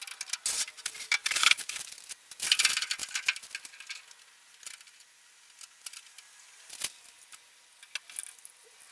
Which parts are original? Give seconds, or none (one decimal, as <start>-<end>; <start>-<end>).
0.0-1.2; 1.8-8.9